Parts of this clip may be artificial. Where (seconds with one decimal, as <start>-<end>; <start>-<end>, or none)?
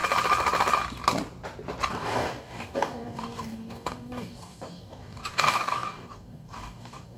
1.9-7.2